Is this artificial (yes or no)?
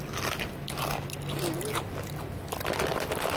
no